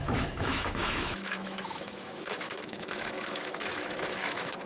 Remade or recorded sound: remade